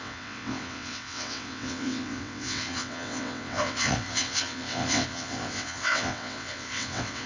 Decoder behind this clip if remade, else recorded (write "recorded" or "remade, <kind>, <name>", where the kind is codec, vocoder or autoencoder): remade, vocoder, WaveNeXt